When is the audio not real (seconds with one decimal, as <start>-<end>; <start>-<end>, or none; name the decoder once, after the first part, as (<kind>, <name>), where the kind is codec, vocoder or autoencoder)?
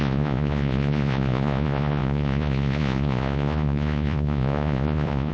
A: 0.0-5.3 (vocoder, Vocos)